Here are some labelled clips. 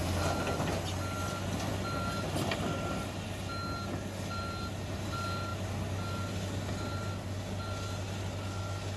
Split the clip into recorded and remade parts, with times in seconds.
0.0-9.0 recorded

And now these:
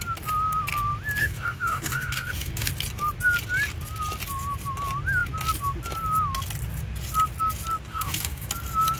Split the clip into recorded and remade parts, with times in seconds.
0.0-1.2 recorded; 1.2-2.7 remade; 2.7-7.9 recorded; 7.9-8.5 remade; 8.5-9.0 recorded

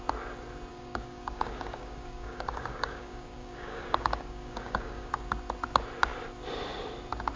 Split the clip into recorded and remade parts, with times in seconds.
0.0-0.7 recorded; 0.7-5.1 remade; 5.1-7.4 recorded

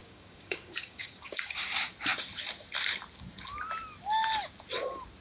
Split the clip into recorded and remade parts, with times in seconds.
0.0-1.7 remade; 1.7-5.2 recorded

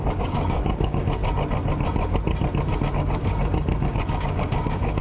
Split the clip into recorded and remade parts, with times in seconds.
0.0-1.2 remade; 1.2-2.9 recorded; 2.9-5.0 remade